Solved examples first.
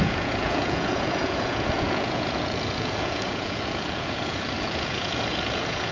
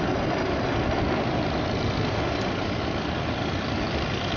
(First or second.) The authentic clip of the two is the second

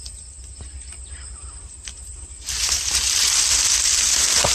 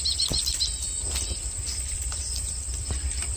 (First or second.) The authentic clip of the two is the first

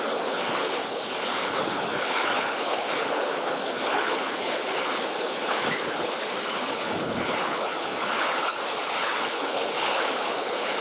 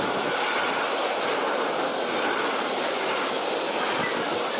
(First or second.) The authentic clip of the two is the second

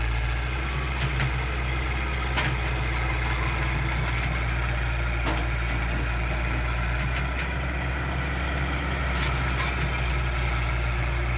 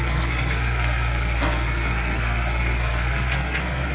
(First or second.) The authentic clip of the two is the first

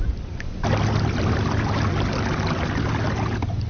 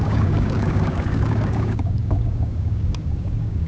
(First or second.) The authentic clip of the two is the first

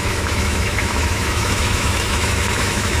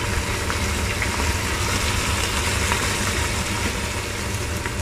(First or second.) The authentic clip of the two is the second